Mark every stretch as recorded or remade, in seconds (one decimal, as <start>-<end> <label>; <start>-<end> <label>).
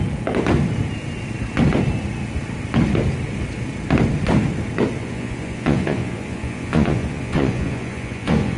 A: 0.0-5.0 recorded; 5.0-8.6 remade